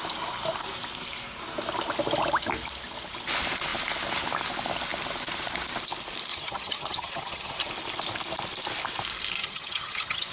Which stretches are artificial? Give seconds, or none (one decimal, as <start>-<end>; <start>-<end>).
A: 6.3-7.7; 9.4-10.3